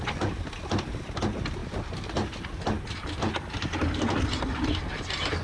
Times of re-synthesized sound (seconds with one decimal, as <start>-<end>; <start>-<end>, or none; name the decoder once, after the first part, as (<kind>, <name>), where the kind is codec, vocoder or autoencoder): none